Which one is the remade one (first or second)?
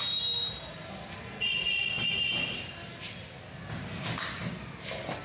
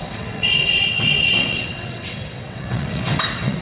second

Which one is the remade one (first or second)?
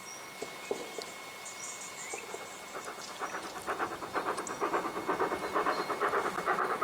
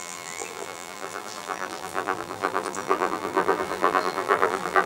second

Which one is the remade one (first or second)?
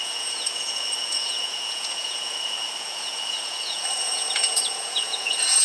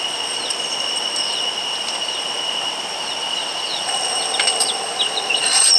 first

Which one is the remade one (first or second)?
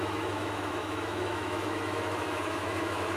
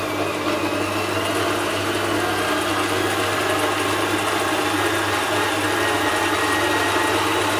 first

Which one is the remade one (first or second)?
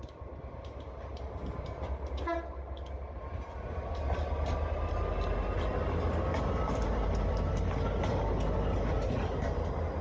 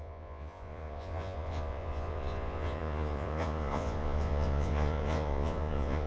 second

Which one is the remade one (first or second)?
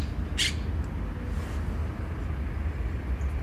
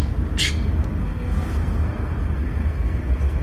second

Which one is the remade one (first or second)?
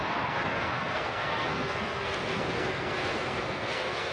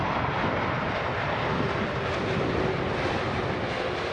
first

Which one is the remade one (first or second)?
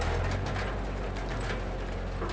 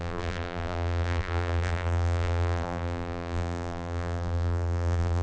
second